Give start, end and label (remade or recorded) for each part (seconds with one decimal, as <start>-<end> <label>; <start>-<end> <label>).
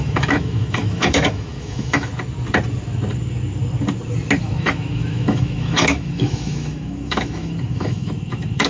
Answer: 0.0-2.1 remade; 2.1-4.4 recorded; 4.4-8.7 remade